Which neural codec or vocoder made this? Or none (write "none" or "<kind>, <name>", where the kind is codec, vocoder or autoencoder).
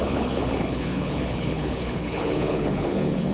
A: codec, HILCodec